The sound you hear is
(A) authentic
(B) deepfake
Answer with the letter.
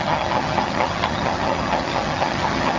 B